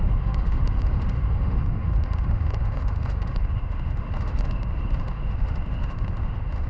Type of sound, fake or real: fake